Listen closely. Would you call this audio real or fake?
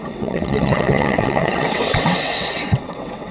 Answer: fake